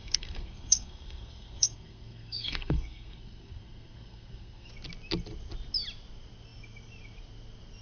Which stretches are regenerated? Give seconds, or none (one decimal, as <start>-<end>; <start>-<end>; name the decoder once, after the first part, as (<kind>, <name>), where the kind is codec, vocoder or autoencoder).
0.0-4.7 (codec, SNAC)